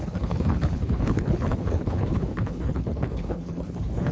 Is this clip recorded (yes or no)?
no